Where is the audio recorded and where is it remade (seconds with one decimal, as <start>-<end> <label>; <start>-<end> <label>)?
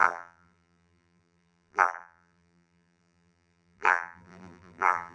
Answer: 0.0-5.1 remade